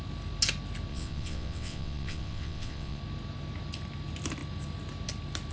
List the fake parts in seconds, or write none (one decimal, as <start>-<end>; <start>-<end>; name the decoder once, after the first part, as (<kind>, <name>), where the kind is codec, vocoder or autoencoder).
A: 0.9-3.0 (vocoder, WaveNeXt)